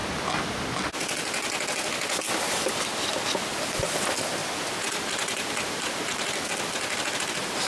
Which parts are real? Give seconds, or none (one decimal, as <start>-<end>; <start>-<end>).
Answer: 0.0-7.7